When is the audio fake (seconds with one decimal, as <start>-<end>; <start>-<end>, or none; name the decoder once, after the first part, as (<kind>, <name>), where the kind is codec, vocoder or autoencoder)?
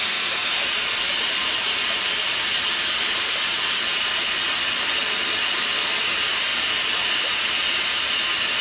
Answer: 6.5-7.2 (vocoder, BigVGAN v2)